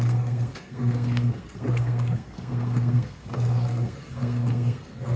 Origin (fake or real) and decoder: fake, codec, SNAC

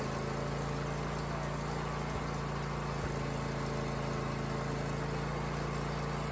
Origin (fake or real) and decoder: real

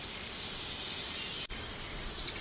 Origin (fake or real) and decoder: real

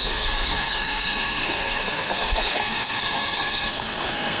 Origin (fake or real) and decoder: fake, codec, SNAC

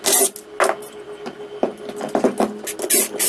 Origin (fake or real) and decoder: real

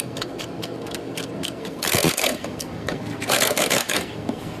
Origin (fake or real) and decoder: fake, codec, SNAC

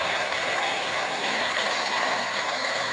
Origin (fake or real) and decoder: fake, codec, SNAC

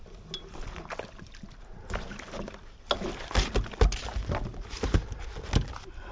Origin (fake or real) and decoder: real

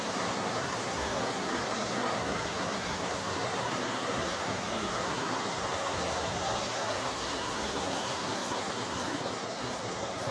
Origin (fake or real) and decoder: fake, codec, SNAC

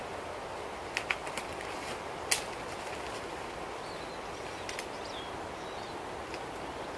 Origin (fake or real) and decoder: real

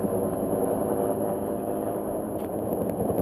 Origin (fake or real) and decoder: real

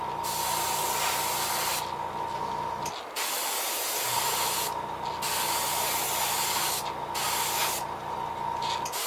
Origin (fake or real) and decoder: real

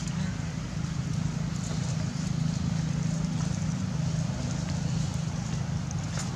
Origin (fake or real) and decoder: real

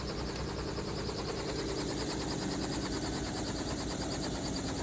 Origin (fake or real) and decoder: real